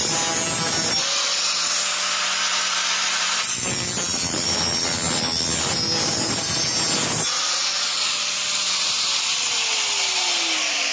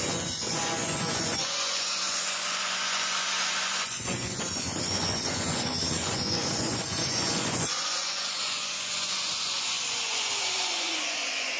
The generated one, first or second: second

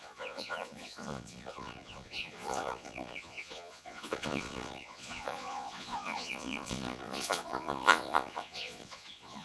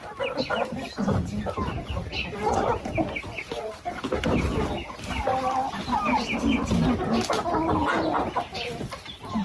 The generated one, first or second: first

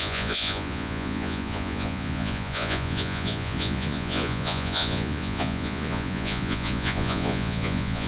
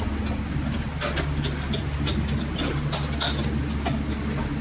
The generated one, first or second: first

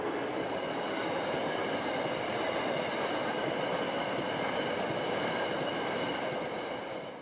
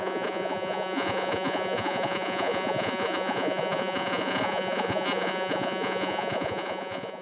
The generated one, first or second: second